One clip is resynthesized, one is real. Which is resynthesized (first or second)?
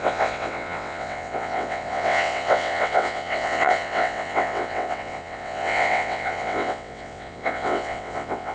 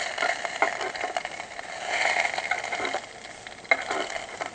first